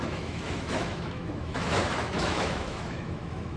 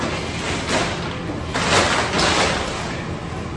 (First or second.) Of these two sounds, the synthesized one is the first